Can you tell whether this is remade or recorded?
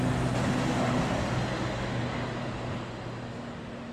recorded